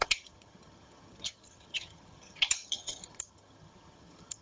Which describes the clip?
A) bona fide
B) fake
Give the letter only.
B